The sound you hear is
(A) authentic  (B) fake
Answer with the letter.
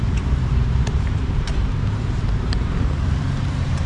B